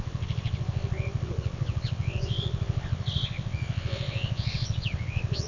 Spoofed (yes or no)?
yes